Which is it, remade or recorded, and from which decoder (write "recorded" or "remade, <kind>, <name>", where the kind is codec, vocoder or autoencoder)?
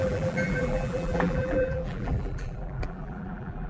remade, vocoder, BigVGAN v2